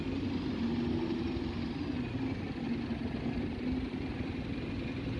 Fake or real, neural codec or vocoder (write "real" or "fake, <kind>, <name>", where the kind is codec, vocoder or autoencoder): real